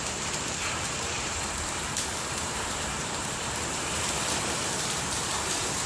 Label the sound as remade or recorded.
remade